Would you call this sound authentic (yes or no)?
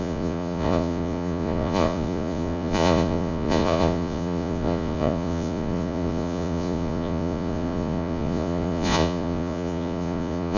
no